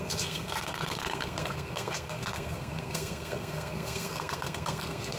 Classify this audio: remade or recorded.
remade